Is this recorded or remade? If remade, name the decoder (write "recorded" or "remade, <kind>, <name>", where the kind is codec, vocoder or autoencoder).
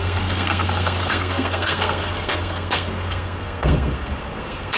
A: remade, codec, SNAC